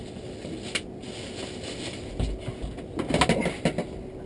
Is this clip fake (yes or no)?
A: no